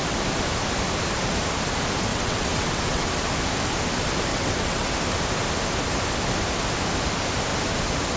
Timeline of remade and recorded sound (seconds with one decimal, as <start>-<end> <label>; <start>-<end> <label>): 0.0-2.1 recorded; 2.1-3.1 remade; 3.1-4.3 recorded; 4.3-4.9 remade; 4.9-8.2 recorded